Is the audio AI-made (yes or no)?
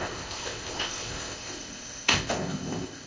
yes